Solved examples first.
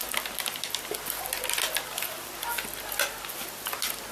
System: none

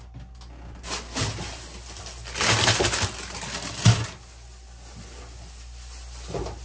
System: none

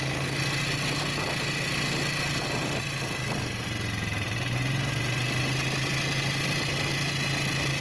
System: none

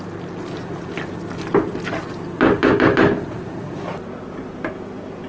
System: none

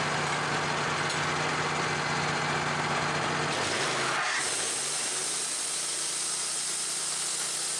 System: none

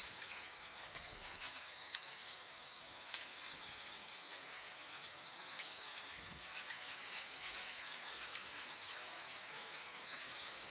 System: codec, SNAC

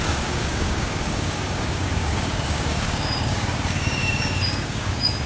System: codec, DAC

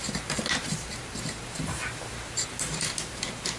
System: vocoder, BigVGAN v2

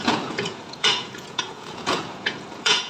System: vocoder, Vocos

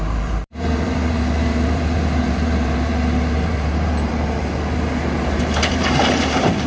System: vocoder, BigVGAN v2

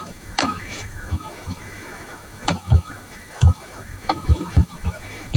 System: autoencoder, DAC-VAE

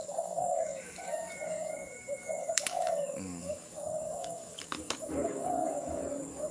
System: codec, DAC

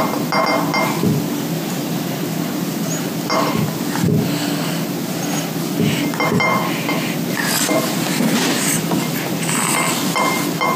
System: none